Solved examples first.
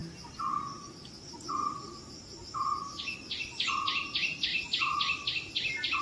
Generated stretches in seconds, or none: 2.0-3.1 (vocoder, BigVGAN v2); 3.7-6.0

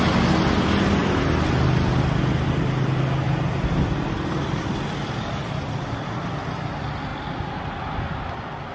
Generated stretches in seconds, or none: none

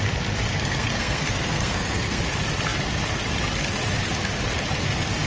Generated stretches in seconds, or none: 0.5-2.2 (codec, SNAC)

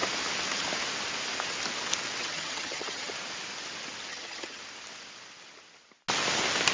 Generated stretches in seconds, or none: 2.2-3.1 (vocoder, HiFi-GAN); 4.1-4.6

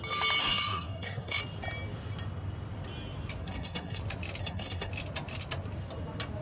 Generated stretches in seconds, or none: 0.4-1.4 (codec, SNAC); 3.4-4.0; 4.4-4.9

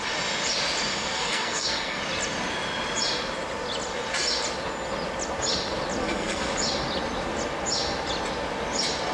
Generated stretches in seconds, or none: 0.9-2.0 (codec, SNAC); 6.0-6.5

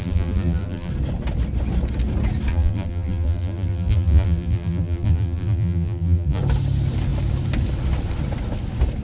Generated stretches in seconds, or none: 0.0-0.9 (vocoder, BigVGAN v2); 2.5-6.4